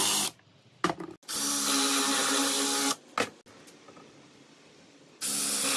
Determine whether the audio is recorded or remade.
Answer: recorded